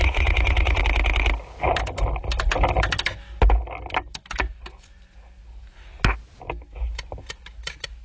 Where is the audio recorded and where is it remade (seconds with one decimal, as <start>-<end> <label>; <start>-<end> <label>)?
0.0-0.8 remade; 0.8-8.0 recorded

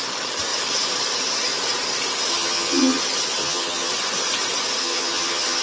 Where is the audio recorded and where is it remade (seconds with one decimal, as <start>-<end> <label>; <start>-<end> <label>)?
0.0-2.3 recorded; 2.3-3.0 remade; 3.0-3.4 recorded; 3.4-3.9 remade; 3.9-4.8 recorded; 4.8-5.6 remade

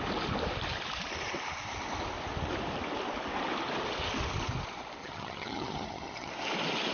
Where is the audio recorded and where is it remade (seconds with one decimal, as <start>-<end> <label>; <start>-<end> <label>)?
0.0-5.0 recorded; 5.0-6.3 remade; 6.3-6.9 recorded

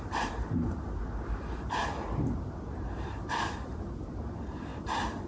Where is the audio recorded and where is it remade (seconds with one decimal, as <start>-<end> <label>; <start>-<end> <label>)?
0.0-1.8 remade; 1.8-2.7 recorded; 2.7-4.7 remade; 4.7-5.3 recorded

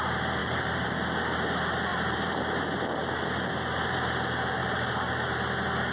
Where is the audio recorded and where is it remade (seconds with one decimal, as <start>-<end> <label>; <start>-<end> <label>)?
0.0-0.4 recorded; 0.4-0.9 remade; 0.9-1.9 recorded; 1.9-2.6 remade; 2.6-4.6 recorded; 4.6-5.1 remade; 5.1-5.9 recorded

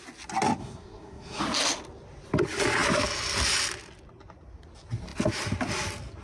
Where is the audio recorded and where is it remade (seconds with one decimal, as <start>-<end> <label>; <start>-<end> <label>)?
0.0-0.6 recorded; 0.6-1.4 remade; 1.4-6.2 recorded

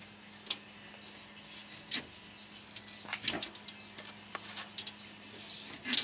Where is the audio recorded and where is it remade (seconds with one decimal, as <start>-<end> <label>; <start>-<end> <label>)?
0.0-6.0 recorded